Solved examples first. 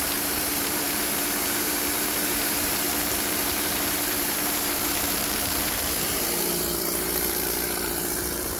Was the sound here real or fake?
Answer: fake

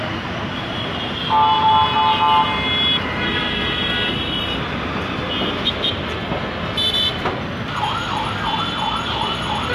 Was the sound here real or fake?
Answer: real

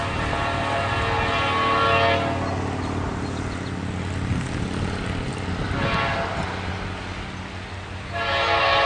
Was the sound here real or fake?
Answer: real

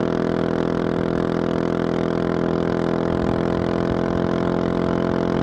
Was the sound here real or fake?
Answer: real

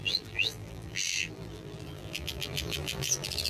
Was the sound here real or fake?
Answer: fake